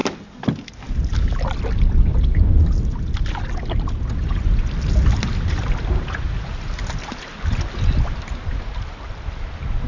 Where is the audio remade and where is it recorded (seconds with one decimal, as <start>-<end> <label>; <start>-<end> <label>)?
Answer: 0.0-9.9 recorded